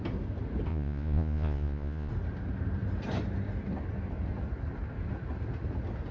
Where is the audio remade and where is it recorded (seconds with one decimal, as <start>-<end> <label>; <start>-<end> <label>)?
0.0-0.7 recorded; 0.7-2.1 remade; 2.1-6.1 recorded